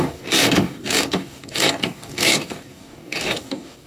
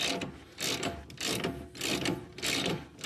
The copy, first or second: first